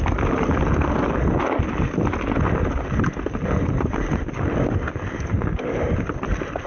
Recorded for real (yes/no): yes